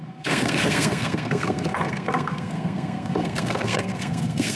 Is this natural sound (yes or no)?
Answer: no